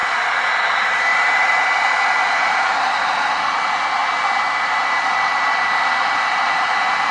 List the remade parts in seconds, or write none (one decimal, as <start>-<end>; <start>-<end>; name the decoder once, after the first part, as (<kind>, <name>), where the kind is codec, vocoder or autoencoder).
none